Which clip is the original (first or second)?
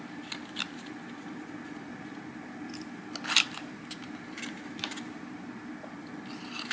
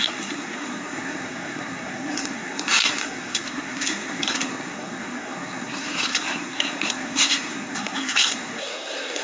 first